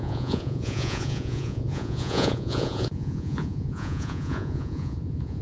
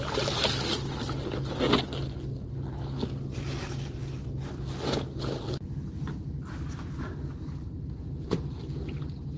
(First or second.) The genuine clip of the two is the second